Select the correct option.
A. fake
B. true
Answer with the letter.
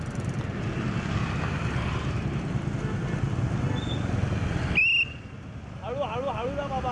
B